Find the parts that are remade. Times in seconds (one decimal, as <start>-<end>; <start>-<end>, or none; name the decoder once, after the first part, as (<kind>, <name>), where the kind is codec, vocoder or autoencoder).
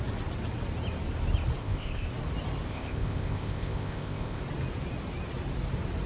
1.6-2.1 (codec, ZipCodec); 2.7-4.4